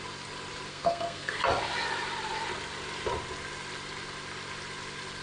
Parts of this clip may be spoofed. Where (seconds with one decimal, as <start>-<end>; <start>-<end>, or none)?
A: 0.7-1.4